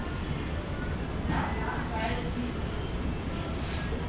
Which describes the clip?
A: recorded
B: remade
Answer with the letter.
A